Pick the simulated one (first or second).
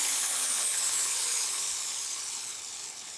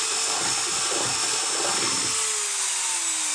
first